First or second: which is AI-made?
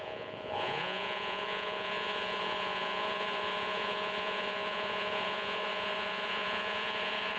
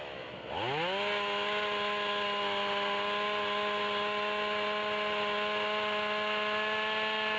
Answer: first